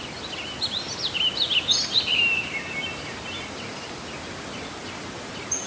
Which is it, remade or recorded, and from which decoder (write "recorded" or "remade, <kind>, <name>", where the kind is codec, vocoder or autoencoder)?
recorded